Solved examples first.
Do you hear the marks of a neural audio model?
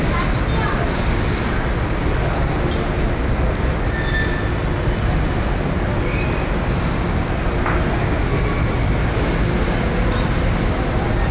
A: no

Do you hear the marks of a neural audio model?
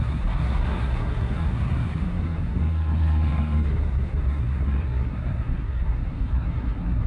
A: yes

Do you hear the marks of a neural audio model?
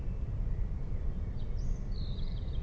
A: no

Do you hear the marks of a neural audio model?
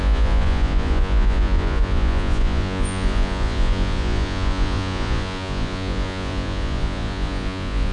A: yes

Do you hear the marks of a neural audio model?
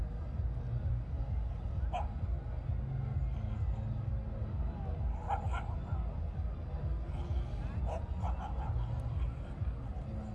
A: no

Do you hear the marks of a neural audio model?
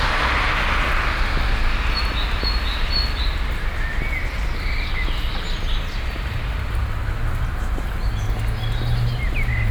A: no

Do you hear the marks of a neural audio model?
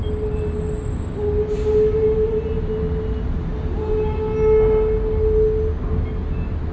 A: no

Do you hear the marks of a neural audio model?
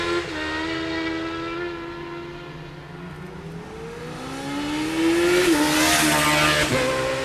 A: no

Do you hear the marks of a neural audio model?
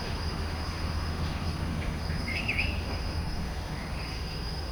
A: yes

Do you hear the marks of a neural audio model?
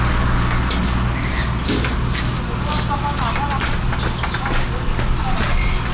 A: no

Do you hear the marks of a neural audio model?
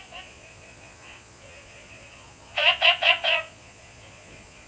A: yes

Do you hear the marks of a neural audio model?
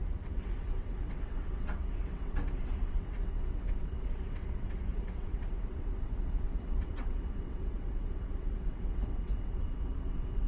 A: yes